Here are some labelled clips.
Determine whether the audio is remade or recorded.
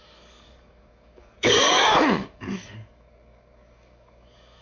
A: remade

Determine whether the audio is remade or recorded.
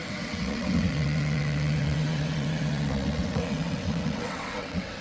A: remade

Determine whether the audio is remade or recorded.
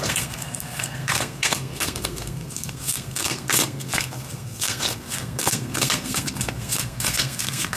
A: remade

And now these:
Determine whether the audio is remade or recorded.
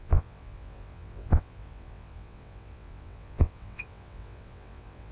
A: remade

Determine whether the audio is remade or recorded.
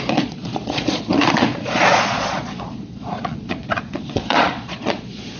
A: remade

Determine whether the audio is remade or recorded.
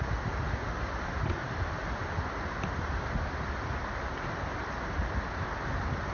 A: recorded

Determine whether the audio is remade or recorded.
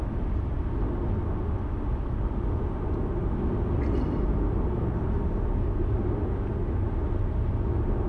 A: recorded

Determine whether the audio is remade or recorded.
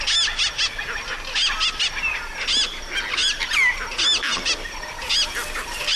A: recorded